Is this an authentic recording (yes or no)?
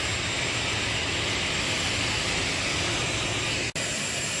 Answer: yes